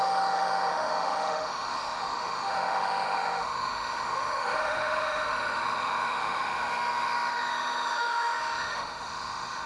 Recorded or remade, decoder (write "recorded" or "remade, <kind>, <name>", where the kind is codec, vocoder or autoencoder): remade, autoencoder, DAC-VAE